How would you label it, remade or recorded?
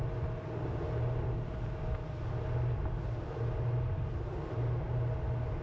recorded